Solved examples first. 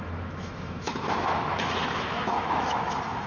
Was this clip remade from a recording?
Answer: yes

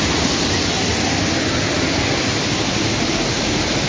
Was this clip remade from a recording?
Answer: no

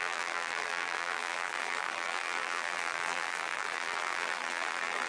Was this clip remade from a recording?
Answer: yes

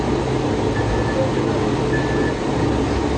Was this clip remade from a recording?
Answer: no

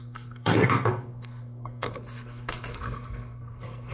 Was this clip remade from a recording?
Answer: yes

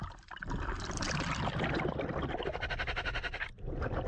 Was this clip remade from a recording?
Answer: no